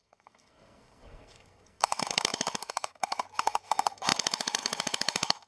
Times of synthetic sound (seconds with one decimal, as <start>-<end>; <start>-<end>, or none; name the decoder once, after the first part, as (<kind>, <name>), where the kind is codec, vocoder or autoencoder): 0.0-5.5 (codec, SNAC)

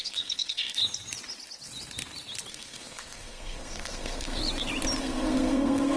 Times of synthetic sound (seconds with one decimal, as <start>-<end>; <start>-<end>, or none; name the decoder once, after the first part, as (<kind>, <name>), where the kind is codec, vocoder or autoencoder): 0.0-0.8 (codec, SNAC); 2.5-4.4; 5.0-6.0